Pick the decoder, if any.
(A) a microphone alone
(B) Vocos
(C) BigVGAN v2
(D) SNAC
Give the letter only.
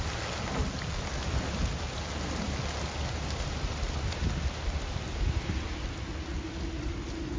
A